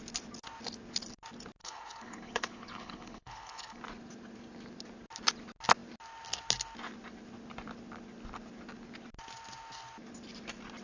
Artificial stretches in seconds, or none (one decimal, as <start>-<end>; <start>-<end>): 1.6-3.8